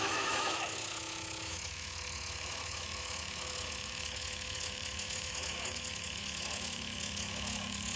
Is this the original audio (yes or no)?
no